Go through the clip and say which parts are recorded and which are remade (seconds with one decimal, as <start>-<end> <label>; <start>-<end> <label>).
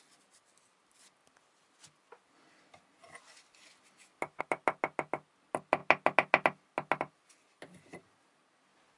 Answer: 0.0-9.0 recorded